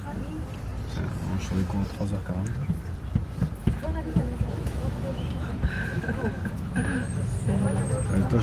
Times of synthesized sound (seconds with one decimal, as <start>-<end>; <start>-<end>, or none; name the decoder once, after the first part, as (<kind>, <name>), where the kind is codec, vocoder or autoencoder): 3.6-7.7 (autoencoder, DAC-VAE)